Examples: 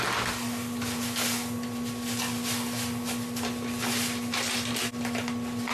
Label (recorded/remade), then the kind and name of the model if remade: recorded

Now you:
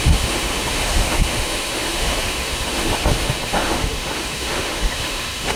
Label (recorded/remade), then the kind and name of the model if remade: remade, autoencoder, DAC-VAE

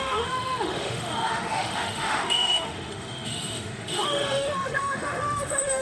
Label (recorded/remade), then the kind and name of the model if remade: remade, autoencoder, DAC-VAE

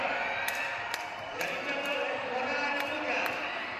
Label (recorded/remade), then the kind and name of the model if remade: recorded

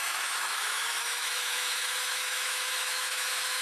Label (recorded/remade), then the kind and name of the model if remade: remade, autoencoder, DAC-VAE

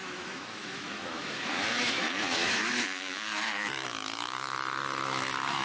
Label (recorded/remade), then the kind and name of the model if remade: remade, autoencoder, DAC-VAE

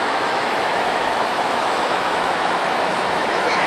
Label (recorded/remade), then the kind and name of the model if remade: remade, autoencoder, DAC-VAE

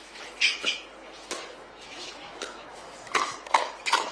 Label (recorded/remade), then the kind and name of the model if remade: remade, autoencoder, DAC-VAE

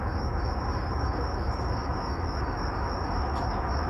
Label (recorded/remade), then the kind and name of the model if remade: remade, autoencoder, DAC-VAE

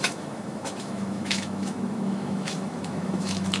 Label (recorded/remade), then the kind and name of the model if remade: remade, autoencoder, DAC-VAE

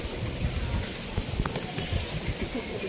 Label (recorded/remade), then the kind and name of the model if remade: recorded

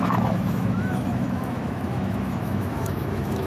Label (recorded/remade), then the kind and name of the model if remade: remade, autoencoder, DAC-VAE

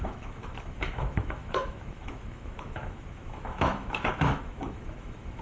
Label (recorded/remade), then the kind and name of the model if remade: remade, autoencoder, DAC-VAE